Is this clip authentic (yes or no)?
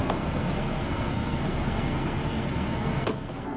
no